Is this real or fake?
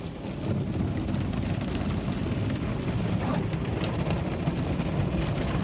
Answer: real